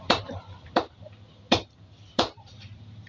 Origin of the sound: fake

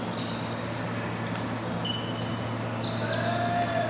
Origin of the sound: real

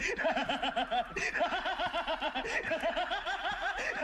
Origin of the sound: fake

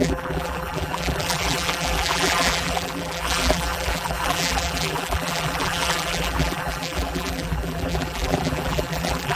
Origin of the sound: fake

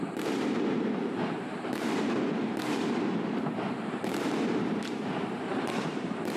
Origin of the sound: fake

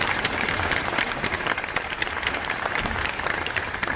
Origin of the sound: fake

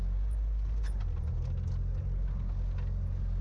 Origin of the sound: real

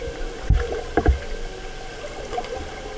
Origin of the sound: real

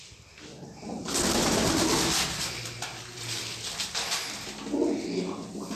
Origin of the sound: real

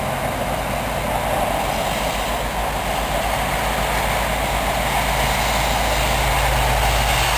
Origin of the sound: real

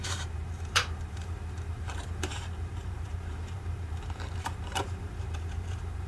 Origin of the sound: fake